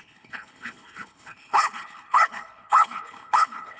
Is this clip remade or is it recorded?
remade